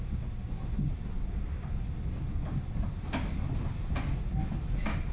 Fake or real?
real